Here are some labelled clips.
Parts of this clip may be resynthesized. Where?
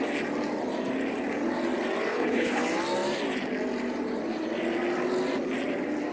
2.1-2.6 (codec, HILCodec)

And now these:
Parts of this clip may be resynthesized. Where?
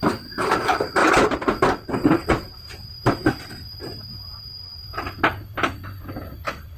none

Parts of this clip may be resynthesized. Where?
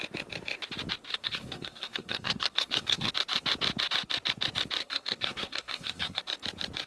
1.1-3.1 (codec, SNAC); 4.8-6.2